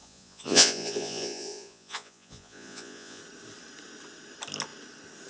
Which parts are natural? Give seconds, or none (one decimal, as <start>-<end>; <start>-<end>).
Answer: 3.2-5.3